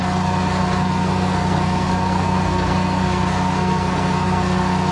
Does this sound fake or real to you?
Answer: fake